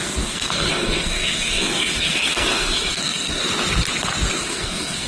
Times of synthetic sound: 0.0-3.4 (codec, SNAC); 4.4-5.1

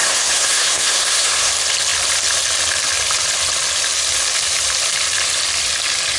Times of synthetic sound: 0.0-1.5 (codec, SNAC)

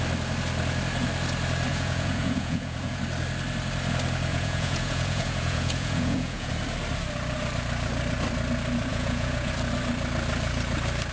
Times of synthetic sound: 1.7-3.0 (vocoder, Vocos); 4.3-6.5; 8.9-9.5

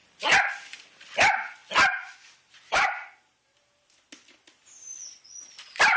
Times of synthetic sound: none

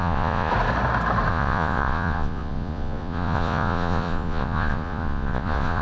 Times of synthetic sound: 0.0-0.5 (vocoder, Vocos); 1.3-5.8

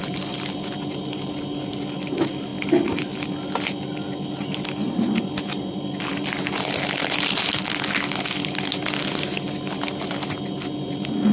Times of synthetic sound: none

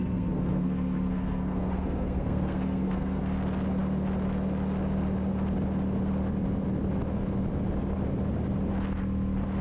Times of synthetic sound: 0.0-3.2 (codec, SNAC)

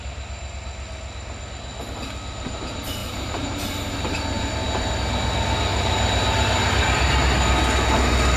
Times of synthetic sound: 3.0-4.9 (vocoder, BigVGAN v2); 5.7-7.2